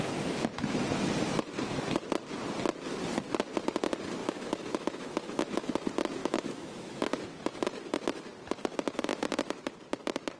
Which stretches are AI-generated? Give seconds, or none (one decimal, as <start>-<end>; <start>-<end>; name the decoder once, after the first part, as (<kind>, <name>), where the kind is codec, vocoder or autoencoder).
4.2-5.7 (autoencoder, DAC-VAE); 6.2-7.2